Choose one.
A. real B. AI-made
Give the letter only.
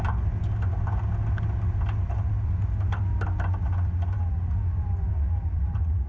A